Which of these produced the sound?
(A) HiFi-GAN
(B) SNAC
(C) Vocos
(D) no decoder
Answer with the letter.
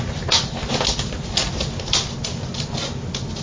D